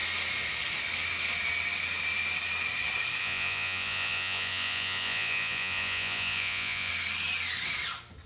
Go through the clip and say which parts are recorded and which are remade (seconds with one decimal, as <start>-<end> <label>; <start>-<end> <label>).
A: 0.0-3.2 recorded; 3.2-6.9 remade; 6.9-8.3 recorded